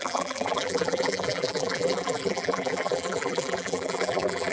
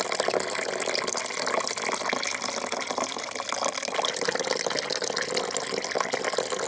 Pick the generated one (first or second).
first